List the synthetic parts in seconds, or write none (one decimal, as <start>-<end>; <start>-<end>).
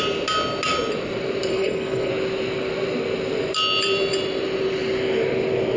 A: 1.5-2.1